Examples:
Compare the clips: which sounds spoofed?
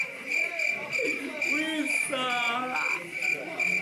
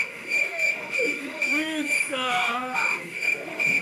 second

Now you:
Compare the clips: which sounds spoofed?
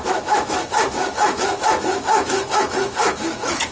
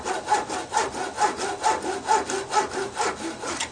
first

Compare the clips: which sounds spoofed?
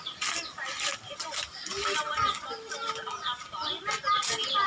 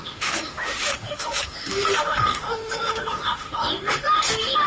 second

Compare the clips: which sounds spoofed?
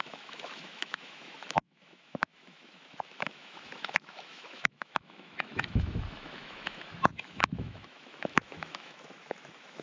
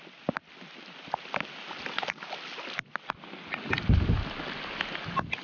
first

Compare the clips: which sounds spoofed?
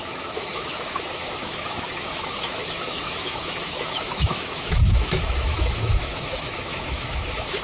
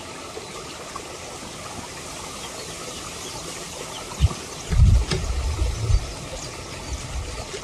first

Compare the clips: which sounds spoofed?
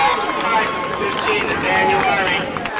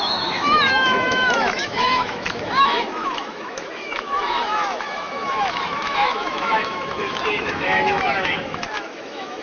second